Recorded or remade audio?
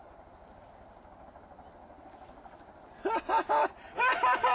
recorded